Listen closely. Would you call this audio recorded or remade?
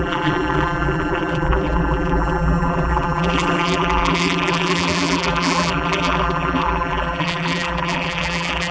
remade